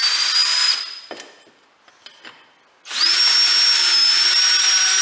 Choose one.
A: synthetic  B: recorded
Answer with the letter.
B